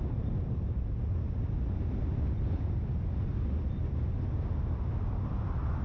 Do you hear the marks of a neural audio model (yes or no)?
no